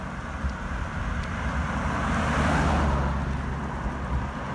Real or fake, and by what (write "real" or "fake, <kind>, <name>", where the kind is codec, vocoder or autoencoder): real